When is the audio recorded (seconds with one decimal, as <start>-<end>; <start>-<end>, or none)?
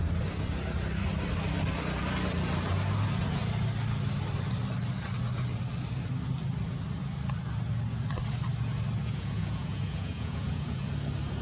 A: 0.0-9.0; 10.9-11.4